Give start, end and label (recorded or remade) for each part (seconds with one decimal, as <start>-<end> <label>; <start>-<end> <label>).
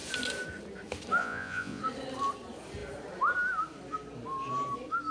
0.0-1.2 recorded; 1.2-1.8 remade; 1.8-5.1 recorded